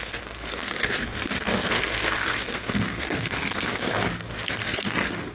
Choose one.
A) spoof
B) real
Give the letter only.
A